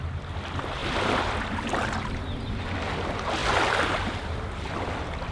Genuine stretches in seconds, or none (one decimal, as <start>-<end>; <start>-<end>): 0.0-0.8; 2.6-3.4; 4.2-5.3